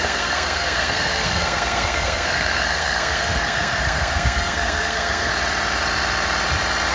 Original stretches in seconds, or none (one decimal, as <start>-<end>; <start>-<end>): 5.3-6.9